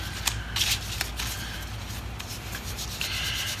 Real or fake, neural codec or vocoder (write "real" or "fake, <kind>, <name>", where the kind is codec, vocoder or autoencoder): real